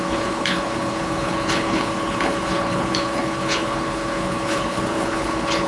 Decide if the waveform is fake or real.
fake